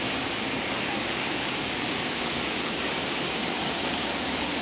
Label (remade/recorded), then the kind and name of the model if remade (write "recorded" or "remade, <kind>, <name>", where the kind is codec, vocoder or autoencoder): remade, codec, DAC